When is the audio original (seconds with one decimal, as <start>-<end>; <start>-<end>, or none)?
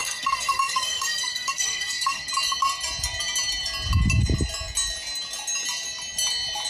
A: 2.3-6.7